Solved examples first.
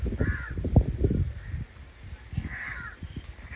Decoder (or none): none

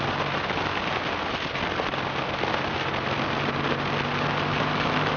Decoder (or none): none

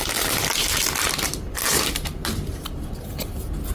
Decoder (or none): none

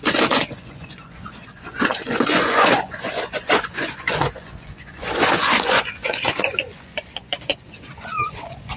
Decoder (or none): vocoder, Vocos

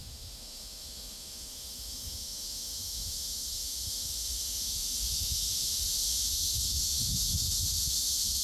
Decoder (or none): autoencoder, DAC-VAE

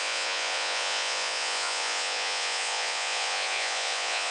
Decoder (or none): vocoder, Vocos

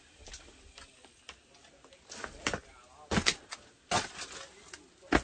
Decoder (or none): none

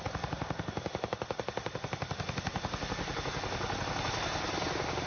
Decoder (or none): none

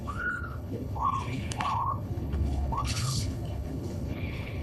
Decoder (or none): codec, HILCodec